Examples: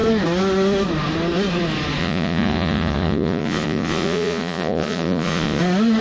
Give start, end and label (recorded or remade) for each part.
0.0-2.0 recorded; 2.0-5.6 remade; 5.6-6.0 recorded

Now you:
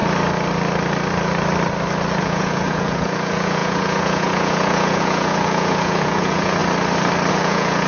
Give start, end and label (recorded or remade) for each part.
0.0-2.2 recorded; 2.2-6.6 remade; 6.6-7.3 recorded; 7.3-7.9 remade

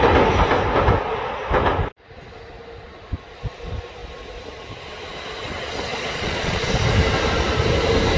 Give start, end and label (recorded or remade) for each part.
0.0-5.9 recorded; 5.9-6.7 remade; 6.7-8.2 recorded

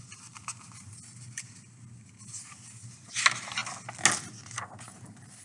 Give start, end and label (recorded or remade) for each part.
0.0-5.4 recorded

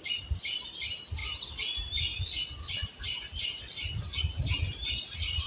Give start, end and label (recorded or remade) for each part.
0.0-5.5 recorded